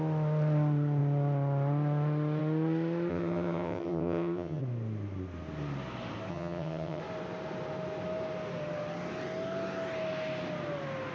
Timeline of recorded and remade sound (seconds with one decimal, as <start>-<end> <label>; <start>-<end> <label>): 0.0-3.1 recorded; 3.1-4.6 remade; 4.6-6.3 recorded; 6.3-7.0 remade; 7.0-11.1 recorded